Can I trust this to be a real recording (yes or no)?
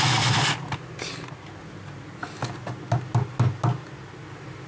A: yes